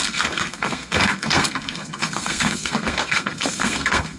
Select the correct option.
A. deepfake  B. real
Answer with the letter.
A